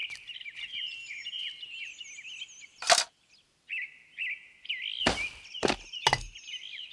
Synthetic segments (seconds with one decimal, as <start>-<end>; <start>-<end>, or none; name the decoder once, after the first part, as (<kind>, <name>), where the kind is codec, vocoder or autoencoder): none